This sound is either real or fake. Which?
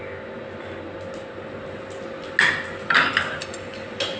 real